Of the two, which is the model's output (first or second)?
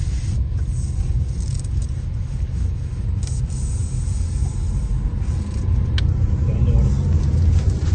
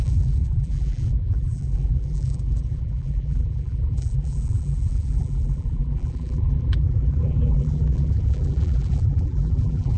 second